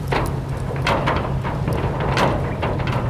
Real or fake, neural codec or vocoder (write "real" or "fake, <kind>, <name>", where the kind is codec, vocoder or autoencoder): real